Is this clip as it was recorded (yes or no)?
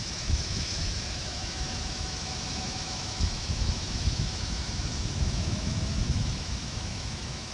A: no